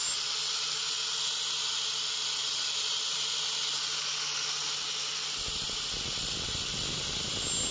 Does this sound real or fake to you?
real